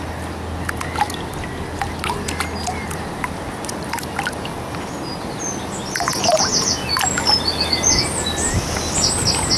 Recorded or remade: recorded